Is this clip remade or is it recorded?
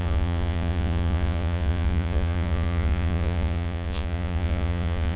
remade